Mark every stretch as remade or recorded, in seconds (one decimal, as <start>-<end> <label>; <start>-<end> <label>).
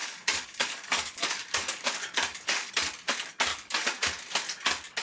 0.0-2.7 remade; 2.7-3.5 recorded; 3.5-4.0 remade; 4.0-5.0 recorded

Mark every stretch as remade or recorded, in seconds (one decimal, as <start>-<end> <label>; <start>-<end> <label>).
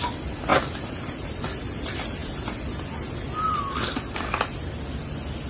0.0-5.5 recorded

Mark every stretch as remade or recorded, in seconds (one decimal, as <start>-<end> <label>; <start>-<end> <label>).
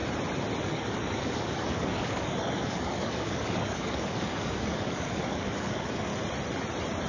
0.0-0.6 recorded; 0.6-6.1 remade; 6.1-7.1 recorded